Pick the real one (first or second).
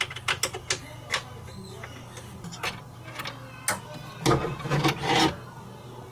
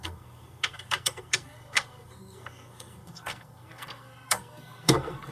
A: first